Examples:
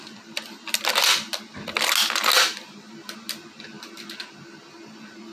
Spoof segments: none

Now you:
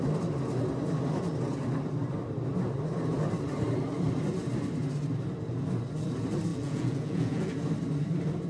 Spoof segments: 6.5-7.5

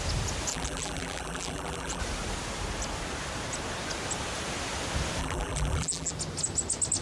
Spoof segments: 0.5-2.0; 5.2-6.1